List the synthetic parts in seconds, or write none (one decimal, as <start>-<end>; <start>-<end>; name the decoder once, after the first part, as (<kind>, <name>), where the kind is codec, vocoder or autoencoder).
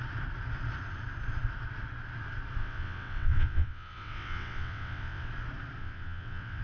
2.6-5.3 (vocoder, WaveNeXt); 5.8-6.6